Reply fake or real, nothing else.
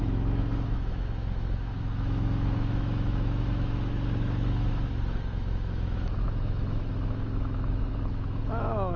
fake